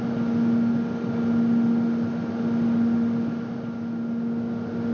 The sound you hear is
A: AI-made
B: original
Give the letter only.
B